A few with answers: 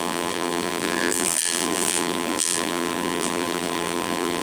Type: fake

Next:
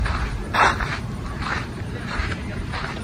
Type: fake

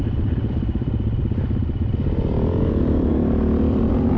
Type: fake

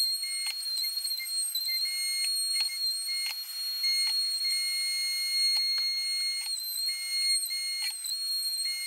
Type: real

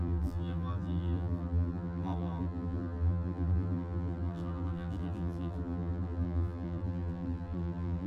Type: fake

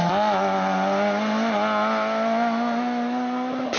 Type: real